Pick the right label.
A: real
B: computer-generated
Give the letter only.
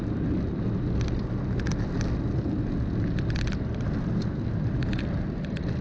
A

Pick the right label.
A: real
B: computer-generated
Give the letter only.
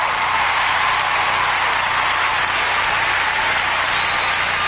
A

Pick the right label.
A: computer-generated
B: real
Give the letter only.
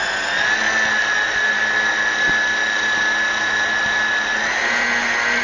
B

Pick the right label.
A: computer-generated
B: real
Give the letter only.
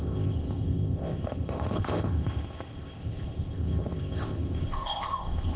A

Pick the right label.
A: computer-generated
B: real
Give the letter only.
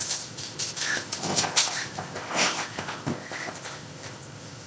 A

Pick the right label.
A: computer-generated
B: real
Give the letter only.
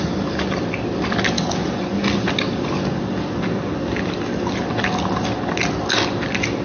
B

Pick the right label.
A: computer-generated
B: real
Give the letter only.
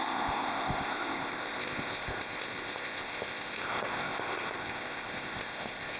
A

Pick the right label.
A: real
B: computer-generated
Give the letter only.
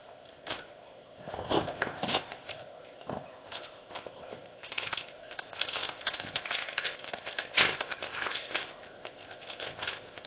B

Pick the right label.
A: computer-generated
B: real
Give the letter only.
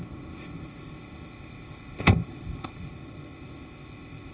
A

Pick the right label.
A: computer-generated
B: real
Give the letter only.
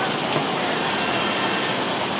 B